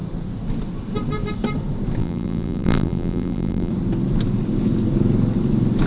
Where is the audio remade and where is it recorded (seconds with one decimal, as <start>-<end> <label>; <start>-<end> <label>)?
0.0-2.0 recorded; 2.0-3.7 remade; 3.7-5.9 recorded